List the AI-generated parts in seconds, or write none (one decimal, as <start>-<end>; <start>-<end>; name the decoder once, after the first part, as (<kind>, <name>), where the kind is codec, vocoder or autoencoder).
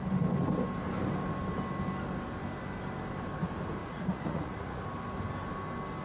3.8-4.8 (vocoder, Vocos)